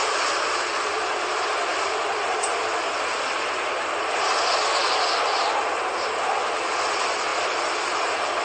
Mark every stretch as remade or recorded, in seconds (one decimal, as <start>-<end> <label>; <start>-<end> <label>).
0.0-8.4 recorded